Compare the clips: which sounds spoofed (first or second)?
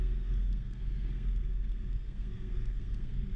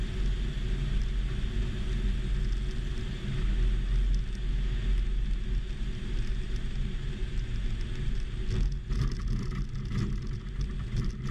first